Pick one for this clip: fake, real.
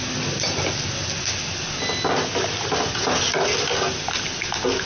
real